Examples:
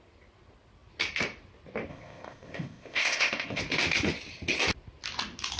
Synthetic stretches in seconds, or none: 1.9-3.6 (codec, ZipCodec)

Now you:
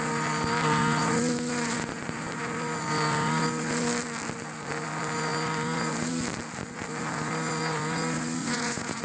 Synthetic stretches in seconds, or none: 8.4-9.0 (vocoder, Vocos)

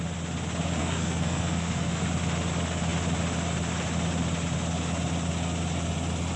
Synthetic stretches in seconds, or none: 0.8-2.0 (codec, SNAC)